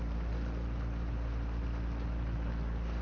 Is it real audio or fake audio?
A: real